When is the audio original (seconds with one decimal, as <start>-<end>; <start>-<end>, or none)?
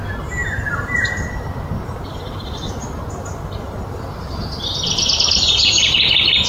0.0-6.5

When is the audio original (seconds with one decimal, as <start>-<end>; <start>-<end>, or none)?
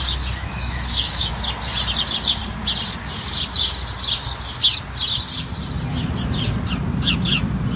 0.0-0.4; 1.3-7.8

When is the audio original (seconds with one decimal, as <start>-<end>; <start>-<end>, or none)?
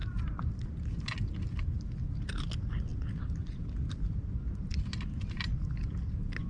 0.0-6.5